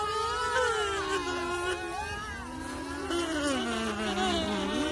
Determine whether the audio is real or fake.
real